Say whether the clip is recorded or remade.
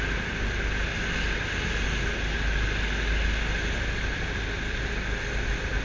recorded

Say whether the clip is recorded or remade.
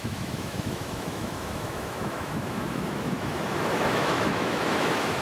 remade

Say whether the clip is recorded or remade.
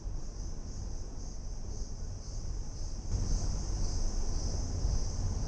recorded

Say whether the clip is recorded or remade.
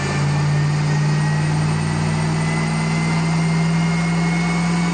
recorded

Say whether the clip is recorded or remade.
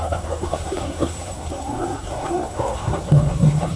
remade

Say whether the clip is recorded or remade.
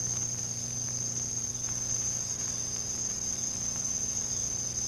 recorded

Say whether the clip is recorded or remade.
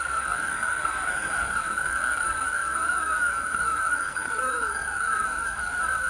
remade